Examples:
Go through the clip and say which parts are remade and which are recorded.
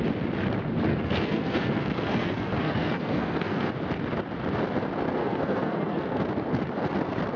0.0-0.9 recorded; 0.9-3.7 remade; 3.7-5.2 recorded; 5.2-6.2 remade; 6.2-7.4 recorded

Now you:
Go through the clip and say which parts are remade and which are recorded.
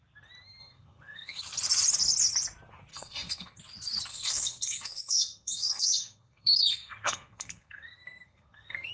0.0-0.6 recorded; 0.6-1.4 remade; 1.4-2.9 recorded; 2.9-3.6 remade; 3.6-4.1 recorded; 4.1-8.9 remade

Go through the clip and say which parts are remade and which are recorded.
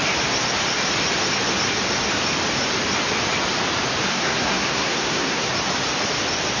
0.0-4.1 recorded; 4.1-5.5 remade; 5.5-6.6 recorded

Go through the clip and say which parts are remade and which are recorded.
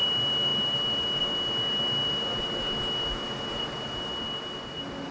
0.0-5.1 recorded